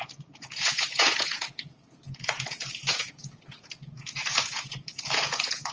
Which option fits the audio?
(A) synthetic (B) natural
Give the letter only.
A